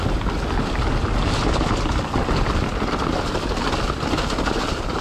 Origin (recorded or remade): recorded